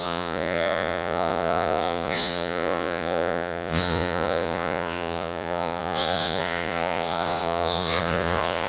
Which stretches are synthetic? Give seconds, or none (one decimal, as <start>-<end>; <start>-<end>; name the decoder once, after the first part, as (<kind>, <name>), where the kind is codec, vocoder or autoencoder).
0.0-8.7 (vocoder, Vocos)